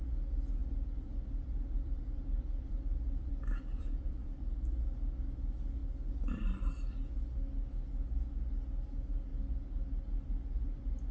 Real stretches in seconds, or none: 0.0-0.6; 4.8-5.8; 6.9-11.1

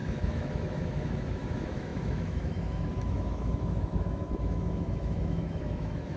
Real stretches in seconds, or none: none

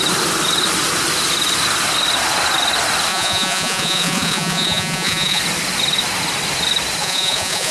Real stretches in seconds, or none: 0.0-3.1; 5.4-7.0